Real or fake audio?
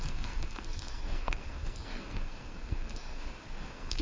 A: fake